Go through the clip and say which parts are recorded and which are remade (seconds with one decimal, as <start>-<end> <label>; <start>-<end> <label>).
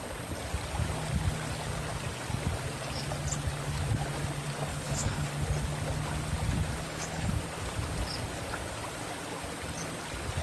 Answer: 0.0-4.7 recorded; 4.7-5.3 remade; 5.3-6.8 recorded; 6.8-7.3 remade; 7.3-10.4 recorded